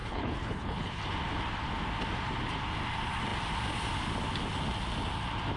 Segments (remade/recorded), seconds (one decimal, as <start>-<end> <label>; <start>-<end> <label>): 0.0-1.0 remade; 1.0-5.6 recorded